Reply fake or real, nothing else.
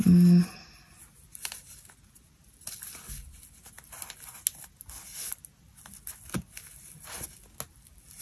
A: real